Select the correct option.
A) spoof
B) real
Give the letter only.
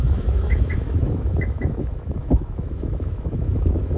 A